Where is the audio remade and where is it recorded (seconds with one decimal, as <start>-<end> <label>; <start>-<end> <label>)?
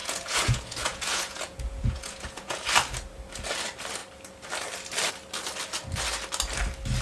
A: 0.0-2.7 remade; 2.7-7.0 recorded